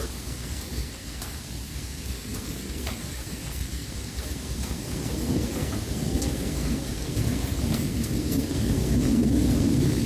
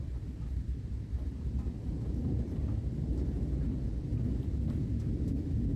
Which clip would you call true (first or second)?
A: second